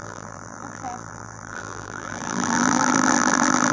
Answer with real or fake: fake